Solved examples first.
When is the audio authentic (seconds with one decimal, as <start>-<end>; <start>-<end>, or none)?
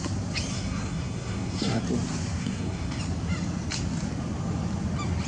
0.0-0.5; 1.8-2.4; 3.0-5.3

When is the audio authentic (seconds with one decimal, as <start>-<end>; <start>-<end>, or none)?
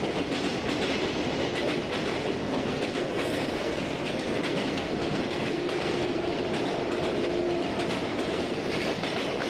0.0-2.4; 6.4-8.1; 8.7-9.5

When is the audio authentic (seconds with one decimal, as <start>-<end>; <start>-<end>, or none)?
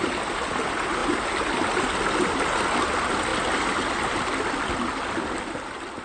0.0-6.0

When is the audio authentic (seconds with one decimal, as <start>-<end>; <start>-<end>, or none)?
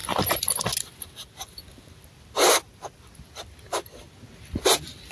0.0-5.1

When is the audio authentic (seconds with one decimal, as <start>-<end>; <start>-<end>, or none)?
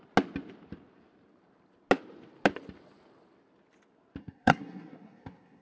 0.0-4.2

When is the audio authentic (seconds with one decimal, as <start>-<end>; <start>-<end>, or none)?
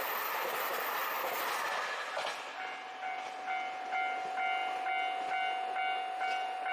0.0-6.7